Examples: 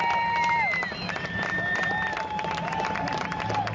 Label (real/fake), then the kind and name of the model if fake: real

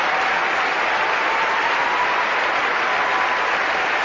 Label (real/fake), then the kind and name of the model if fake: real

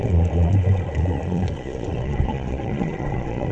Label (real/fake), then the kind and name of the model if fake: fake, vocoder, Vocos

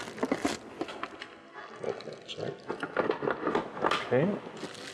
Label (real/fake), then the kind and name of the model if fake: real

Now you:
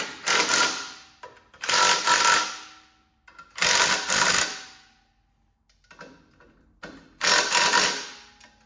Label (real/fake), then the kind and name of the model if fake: real